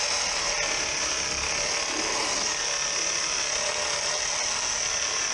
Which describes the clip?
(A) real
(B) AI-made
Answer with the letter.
A